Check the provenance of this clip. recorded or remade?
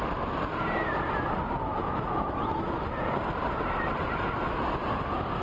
recorded